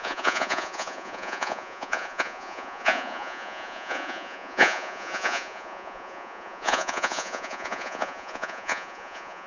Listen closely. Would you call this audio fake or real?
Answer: fake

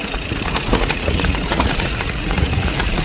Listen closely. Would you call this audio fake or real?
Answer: fake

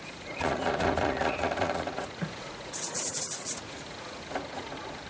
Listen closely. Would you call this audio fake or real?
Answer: fake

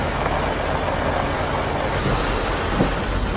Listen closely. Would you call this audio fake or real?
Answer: real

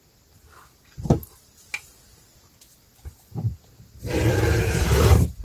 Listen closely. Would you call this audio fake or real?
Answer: real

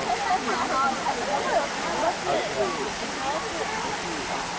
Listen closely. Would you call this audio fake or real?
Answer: real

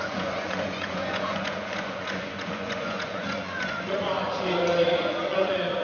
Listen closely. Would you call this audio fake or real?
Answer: fake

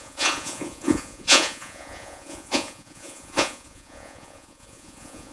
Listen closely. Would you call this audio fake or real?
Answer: fake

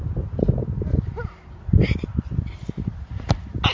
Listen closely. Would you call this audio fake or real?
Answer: real